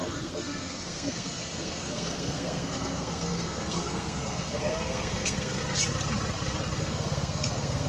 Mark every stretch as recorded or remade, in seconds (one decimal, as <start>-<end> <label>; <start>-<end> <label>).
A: 0.0-5.6 remade; 5.6-6.8 recorded; 6.8-7.9 remade